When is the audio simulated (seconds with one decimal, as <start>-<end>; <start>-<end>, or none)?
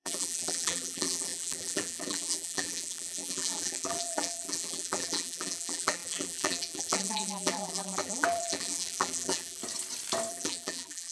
0.0-9.6; 10.3-11.1